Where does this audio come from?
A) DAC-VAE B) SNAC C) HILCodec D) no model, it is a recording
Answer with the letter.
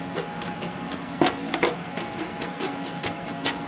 B